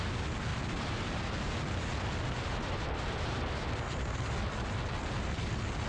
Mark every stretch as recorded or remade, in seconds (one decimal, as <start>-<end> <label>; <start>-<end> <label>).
0.0-5.9 recorded